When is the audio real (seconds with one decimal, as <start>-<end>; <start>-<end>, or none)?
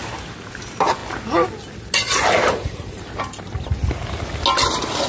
0.0-5.1